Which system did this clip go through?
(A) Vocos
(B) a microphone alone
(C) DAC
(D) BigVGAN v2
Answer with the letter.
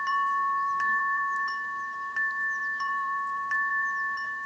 D